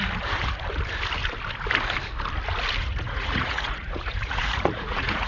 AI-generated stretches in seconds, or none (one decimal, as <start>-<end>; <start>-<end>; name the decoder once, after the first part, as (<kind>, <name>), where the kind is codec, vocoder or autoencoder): 2.8-5.3 (vocoder, Vocos)